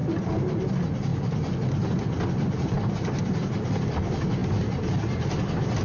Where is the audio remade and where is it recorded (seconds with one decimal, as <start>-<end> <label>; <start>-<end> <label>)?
0.0-5.8 recorded